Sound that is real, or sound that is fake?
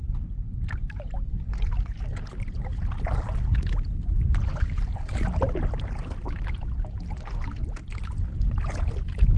real